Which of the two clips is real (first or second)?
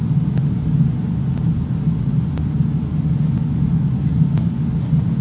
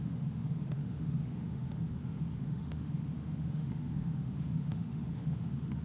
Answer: first